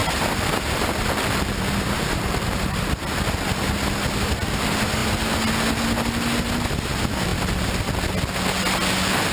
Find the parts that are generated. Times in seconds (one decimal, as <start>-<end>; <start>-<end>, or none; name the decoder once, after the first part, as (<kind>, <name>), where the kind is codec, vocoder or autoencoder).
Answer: 0.0-2.8 (vocoder, BigVGAN v2)